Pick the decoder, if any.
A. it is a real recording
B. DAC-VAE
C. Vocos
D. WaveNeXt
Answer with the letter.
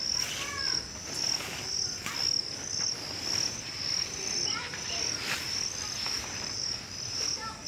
A